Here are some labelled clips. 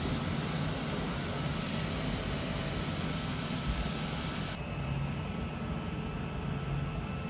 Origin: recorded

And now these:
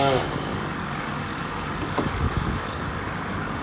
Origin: remade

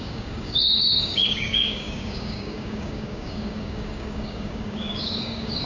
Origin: remade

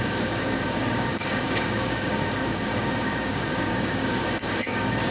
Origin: remade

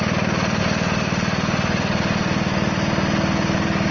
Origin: recorded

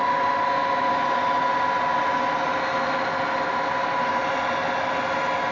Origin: recorded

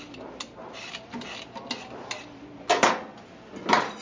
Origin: recorded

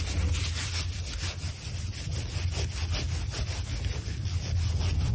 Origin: recorded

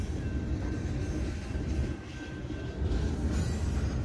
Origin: recorded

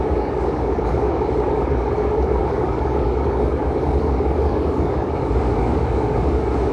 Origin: remade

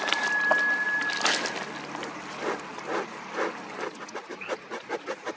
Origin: recorded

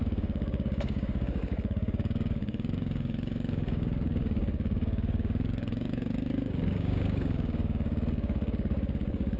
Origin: remade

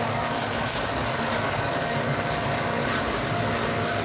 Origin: remade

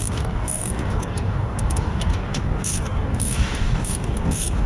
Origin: remade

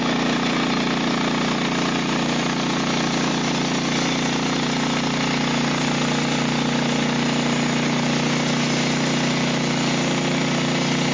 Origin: recorded